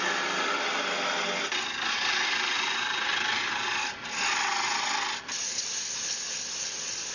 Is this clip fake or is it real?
real